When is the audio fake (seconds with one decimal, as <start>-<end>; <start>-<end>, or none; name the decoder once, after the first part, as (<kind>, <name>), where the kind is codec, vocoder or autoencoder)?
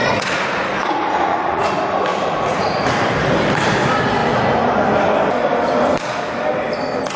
0.0-1.7 (vocoder, Vocos); 2.1-2.9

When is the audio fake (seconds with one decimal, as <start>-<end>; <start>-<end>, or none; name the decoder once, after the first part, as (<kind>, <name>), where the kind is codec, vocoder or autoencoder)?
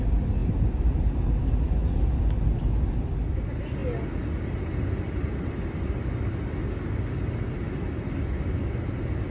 none